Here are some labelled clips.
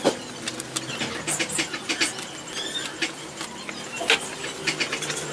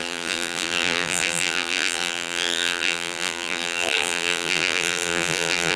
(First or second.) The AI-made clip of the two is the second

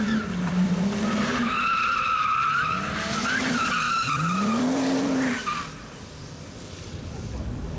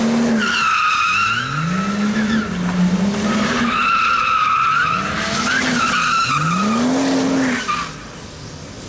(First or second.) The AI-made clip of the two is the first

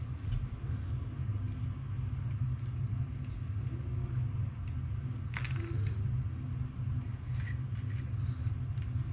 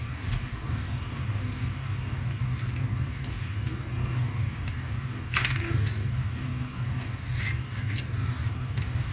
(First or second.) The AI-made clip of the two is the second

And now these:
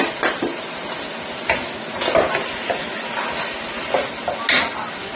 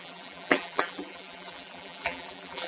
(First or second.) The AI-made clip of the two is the second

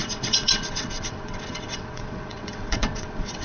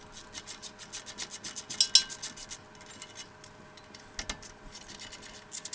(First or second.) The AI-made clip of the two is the first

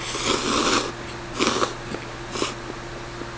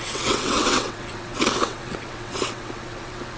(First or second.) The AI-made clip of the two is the second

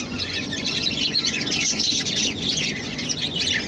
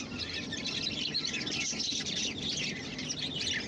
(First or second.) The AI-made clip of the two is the first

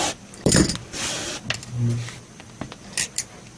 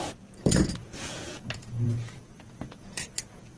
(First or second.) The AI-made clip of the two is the second